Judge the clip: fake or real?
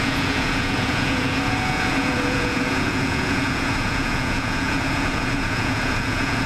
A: fake